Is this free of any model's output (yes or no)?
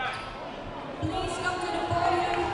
yes